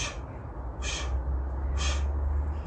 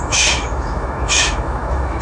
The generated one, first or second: second